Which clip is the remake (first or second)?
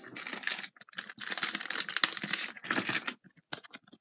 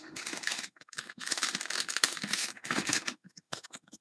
second